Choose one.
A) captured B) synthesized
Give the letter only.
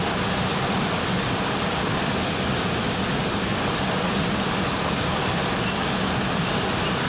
A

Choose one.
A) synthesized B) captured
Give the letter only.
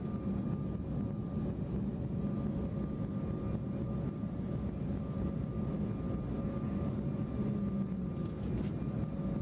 B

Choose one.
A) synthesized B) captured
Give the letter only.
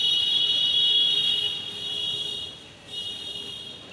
B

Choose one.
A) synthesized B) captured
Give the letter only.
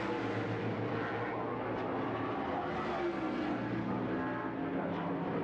B